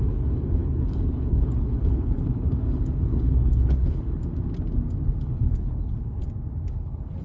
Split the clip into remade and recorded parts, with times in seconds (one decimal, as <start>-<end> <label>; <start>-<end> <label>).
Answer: 0.0-4.2 remade; 4.2-5.1 recorded; 5.1-6.2 remade; 6.2-6.7 recorded; 6.7-7.2 remade